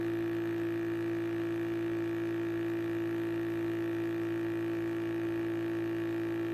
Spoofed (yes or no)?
no